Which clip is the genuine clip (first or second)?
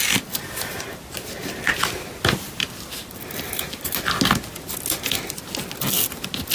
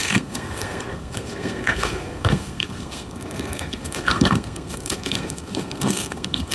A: first